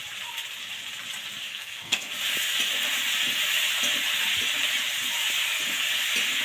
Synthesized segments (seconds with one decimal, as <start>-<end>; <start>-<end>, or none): 1.5-2.1